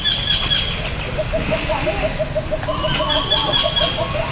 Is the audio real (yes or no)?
yes